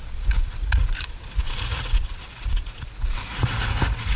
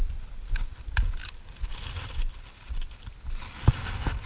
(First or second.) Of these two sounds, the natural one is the second